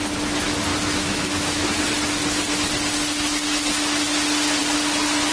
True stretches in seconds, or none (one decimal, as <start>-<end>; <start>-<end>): 0.0-0.7; 1.8-5.3